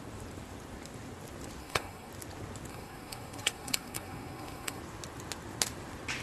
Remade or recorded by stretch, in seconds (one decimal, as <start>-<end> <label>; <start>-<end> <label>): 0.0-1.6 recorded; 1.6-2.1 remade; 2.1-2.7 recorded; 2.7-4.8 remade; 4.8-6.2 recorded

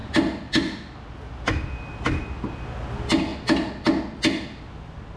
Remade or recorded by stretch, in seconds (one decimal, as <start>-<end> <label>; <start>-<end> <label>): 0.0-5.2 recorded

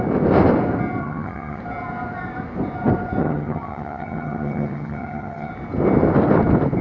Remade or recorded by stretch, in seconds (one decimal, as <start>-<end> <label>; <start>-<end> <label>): 0.0-1.0 recorded; 1.0-1.6 remade; 1.6-3.2 recorded; 3.2-5.5 remade; 5.5-6.8 recorded

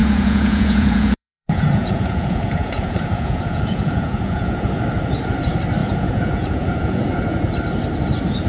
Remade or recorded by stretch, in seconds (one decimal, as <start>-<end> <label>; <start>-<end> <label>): 0.0-4.7 remade; 4.7-5.8 recorded; 5.8-7.5 remade; 7.5-8.5 recorded

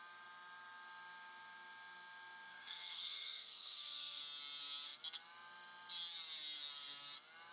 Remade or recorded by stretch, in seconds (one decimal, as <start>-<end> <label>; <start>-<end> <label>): 0.0-2.5 recorded; 2.5-4.2 remade; 4.2-7.5 recorded

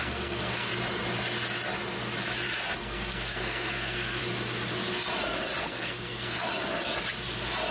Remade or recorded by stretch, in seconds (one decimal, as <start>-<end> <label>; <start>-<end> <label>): 0.0-0.7 remade; 0.7-2.8 recorded; 2.8-4.2 remade; 4.2-5.6 recorded; 5.6-6.5 remade; 6.5-7.7 recorded

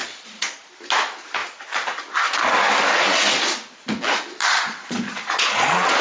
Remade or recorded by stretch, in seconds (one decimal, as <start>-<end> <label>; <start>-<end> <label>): 0.0-0.7 remade; 0.7-4.4 recorded; 4.4-6.0 remade